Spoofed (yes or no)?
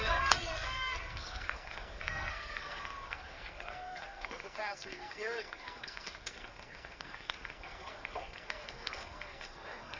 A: yes